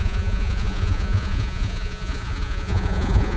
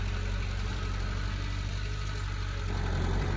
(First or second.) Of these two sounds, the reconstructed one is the first